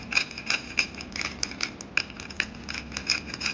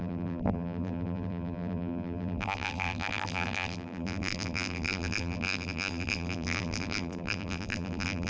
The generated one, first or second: second